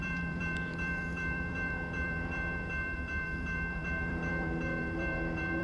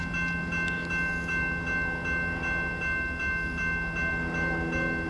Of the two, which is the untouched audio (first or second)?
second